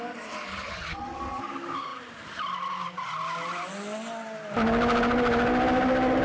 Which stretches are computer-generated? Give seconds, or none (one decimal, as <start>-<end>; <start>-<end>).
0.5-1.4